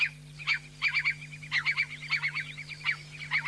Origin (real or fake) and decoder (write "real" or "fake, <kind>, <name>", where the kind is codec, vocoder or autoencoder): real